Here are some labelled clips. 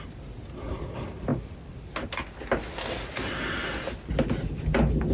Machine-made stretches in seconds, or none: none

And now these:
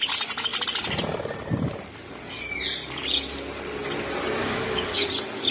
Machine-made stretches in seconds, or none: 4.4-5.1

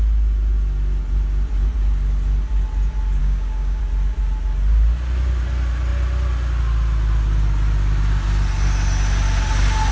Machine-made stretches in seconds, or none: 3.2-3.8

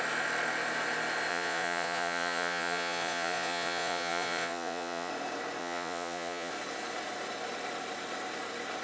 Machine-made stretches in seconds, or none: 1.3-5.1; 5.6-6.5

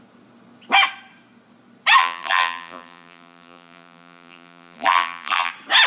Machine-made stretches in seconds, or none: 2.0-5.5

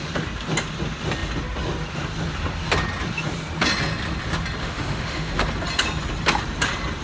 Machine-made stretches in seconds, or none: 4.6-5.3

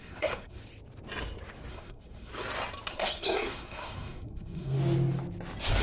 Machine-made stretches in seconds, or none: 0.0-0.6; 1.7-2.3; 2.9-4.8